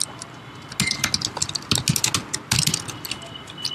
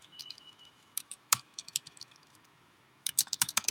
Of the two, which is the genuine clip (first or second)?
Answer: first